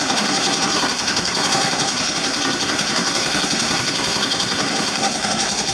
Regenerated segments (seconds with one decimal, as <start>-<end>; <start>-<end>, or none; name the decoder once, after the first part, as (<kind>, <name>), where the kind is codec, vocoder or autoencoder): 0.0-5.7 (codec, SNAC)